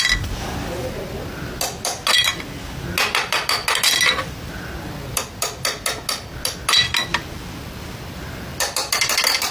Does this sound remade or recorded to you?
recorded